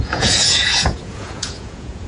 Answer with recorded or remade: remade